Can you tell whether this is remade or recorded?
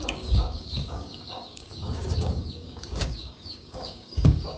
remade